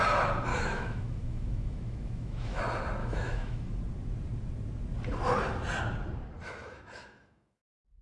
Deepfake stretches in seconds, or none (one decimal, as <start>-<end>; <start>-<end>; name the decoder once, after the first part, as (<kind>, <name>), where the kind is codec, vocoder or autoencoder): 0.5-2.6 (autoencoder, DAC-VAE); 3.0-3.8; 6.4-7.6